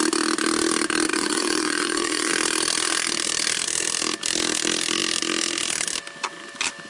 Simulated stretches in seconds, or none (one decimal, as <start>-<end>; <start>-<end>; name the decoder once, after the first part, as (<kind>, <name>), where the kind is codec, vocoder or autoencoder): 1.1-2.3 (vocoder, Vocos)